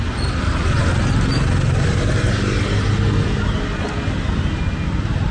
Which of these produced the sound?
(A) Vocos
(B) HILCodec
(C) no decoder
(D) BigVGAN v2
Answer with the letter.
C